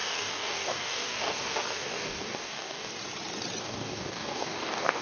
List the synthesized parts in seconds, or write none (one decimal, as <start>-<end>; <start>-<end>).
0.0-2.9; 3.6-5.0